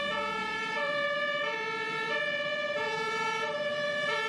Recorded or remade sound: remade